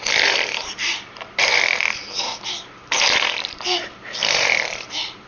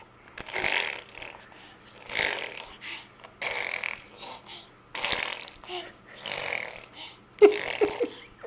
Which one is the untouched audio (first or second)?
second